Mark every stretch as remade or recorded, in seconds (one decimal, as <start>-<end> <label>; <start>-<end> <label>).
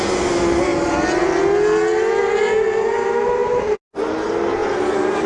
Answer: 0.0-5.3 recorded